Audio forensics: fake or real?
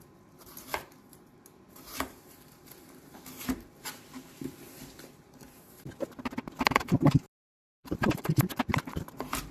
fake